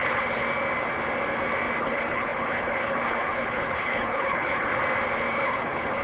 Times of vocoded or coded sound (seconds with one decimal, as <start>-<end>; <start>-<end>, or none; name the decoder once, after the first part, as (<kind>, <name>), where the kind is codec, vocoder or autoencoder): 0.0-0.4 (codec, HILCodec); 1.8-4.7; 5.3-6.0